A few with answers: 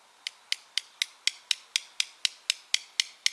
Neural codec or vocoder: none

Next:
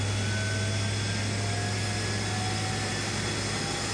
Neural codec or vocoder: none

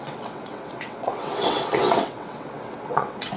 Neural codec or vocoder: vocoder, WaveNeXt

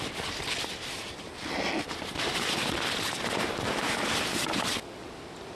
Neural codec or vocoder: none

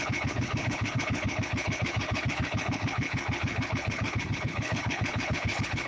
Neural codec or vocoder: codec, HILCodec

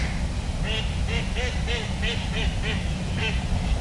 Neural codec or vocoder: none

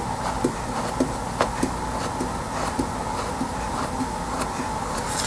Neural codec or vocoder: none